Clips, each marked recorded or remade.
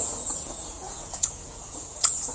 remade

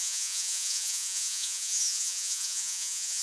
remade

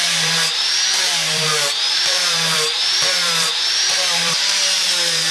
remade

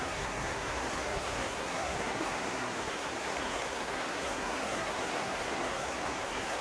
remade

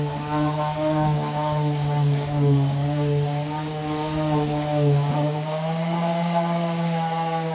remade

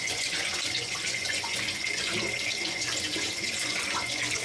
remade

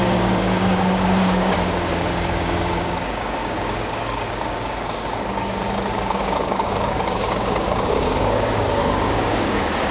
remade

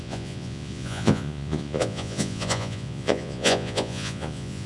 remade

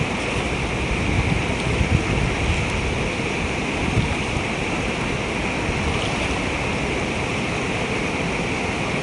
recorded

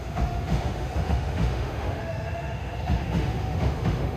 remade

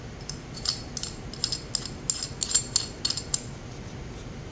recorded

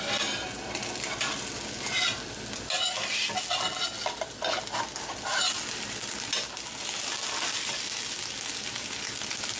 recorded